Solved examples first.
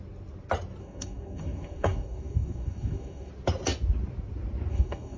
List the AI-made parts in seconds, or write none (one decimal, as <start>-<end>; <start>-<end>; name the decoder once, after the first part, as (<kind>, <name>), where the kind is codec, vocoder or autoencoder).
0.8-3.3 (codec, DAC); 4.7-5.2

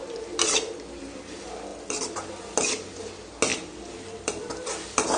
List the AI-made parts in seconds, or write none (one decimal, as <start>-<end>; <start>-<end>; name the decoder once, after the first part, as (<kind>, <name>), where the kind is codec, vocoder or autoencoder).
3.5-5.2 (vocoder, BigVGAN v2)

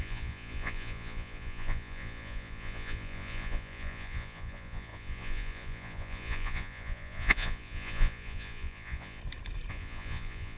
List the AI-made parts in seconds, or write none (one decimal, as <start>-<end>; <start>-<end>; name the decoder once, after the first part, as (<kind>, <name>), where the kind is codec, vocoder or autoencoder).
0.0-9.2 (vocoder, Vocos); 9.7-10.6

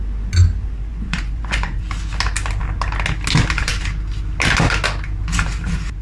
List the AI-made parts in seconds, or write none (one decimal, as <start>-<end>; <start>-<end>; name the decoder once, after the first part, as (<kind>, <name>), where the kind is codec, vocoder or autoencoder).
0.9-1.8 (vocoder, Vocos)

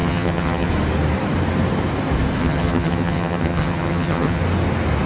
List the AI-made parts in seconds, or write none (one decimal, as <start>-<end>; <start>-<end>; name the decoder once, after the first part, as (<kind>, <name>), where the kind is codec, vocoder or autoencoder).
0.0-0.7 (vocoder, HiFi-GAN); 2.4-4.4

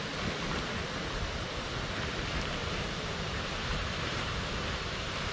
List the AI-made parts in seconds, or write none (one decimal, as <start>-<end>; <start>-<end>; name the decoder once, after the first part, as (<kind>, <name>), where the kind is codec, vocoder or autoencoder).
2.6-4.4 (vocoder, BigVGAN v2)